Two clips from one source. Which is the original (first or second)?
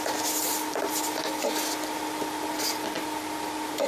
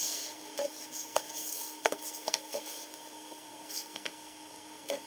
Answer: first